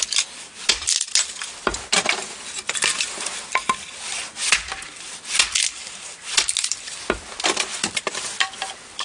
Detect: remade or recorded recorded